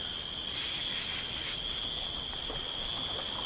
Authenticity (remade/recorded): recorded